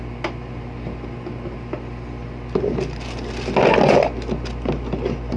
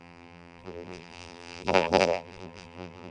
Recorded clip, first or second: first